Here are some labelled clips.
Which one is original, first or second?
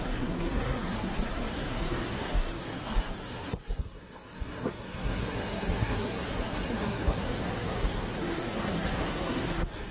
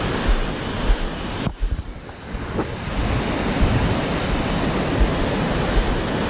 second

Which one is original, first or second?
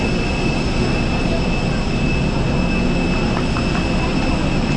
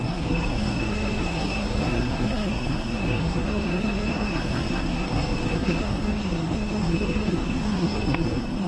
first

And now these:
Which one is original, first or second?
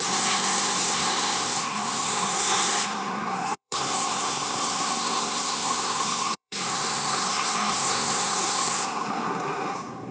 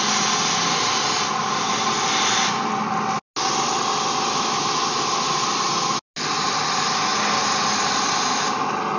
second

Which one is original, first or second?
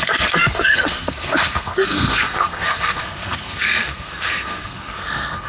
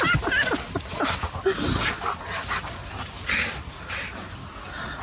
second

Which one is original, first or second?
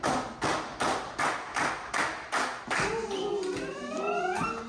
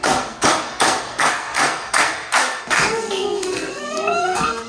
first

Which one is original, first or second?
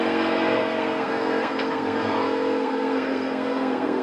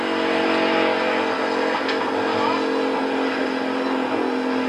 second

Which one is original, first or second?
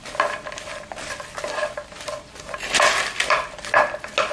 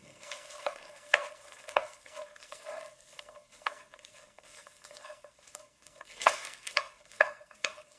first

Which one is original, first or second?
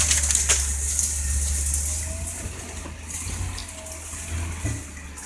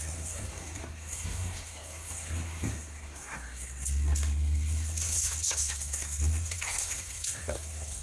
first